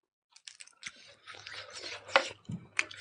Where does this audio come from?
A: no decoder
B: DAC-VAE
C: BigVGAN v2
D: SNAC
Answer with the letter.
A